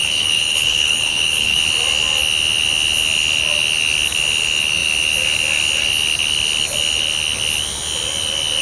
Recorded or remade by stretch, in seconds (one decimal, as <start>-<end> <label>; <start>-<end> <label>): 0.0-1.6 remade; 1.6-8.6 recorded